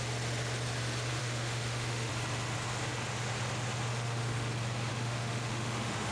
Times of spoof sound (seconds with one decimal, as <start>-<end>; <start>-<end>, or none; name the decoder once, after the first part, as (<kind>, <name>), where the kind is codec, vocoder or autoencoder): 1.2-2.1 (autoencoder, DAC-VAE); 3.9-4.5; 4.9-6.1